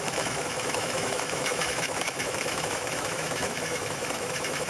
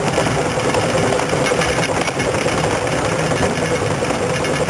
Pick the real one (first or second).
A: second